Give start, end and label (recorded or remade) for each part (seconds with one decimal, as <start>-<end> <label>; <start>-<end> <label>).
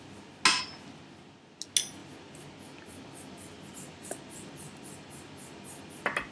0.0-6.3 recorded